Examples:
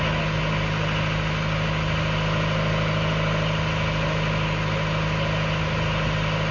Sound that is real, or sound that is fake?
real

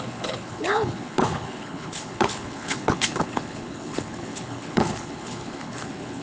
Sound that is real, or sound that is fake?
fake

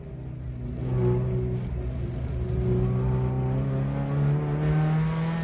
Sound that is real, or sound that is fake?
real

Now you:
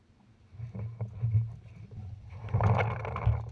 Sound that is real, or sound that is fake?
real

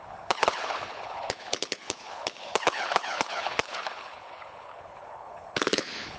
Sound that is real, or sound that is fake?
fake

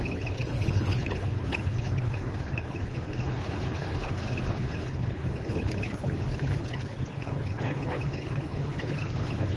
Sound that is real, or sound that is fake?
fake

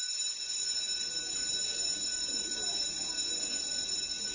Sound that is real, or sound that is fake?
real